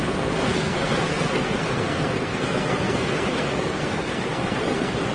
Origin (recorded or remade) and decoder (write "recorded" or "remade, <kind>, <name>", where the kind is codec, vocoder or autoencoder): remade, codec, SNAC